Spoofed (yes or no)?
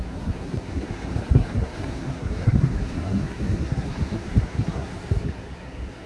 yes